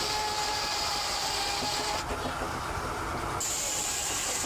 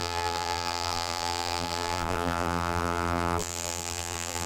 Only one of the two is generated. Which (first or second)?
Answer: second